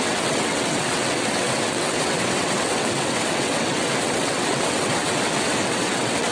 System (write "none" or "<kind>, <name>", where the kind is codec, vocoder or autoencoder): vocoder, WaveNeXt